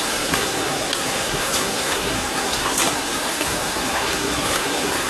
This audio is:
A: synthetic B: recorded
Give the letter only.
A